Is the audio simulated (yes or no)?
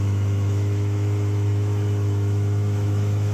yes